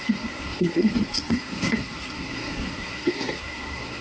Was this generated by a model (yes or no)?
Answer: yes